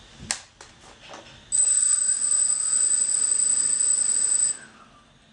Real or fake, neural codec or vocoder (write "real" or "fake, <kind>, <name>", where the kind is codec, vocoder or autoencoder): real